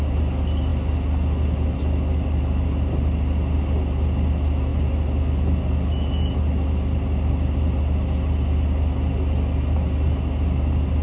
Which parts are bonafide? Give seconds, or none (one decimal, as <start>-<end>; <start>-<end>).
0.0-11.0